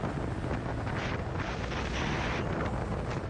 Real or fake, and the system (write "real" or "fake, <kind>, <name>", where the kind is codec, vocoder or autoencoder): real